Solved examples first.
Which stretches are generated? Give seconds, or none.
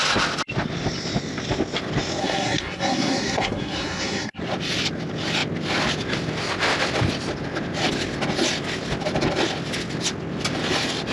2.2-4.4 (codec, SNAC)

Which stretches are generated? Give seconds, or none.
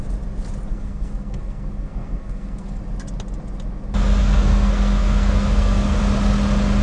0.7-2.8 (codec, SNAC); 4.2-6.0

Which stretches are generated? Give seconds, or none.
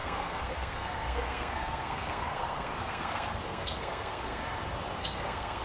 0.0-4.4 (codec, SNAC); 5.0-5.6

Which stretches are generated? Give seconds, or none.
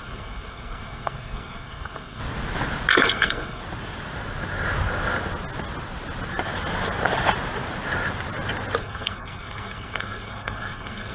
0.0-2.2 (codec, SNAC); 2.9-3.6; 8.8-11.1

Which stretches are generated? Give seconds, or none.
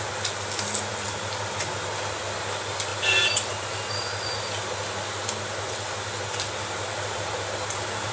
none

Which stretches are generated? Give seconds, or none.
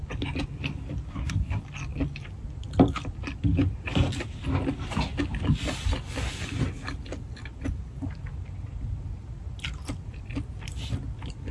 1.1-1.6 (codec, SNAC)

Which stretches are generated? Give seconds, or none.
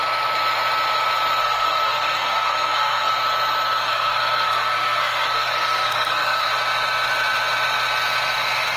1.4-3.1 (codec, SNAC); 3.8-6.5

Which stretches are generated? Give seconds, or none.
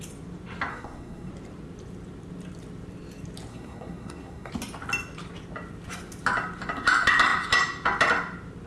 0.7-1.3 (codec, SNAC); 3.5-4.5